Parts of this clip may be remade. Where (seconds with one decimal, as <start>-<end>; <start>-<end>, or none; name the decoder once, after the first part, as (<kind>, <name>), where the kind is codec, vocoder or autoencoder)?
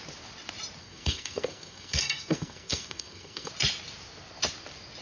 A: 0.8-3.5 (codec, SNAC)